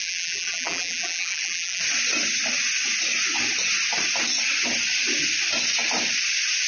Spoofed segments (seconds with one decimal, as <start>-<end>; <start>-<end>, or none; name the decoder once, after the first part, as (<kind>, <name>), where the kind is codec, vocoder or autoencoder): 0.0-1.8 (vocoder, BigVGAN v2)